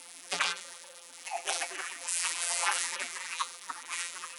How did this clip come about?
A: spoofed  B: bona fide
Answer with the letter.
A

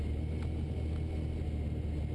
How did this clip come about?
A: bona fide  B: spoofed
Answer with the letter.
A